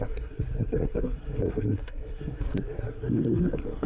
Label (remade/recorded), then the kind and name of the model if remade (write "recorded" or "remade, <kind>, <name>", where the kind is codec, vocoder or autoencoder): remade, codec, SNAC